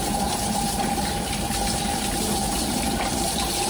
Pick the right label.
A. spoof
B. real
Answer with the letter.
A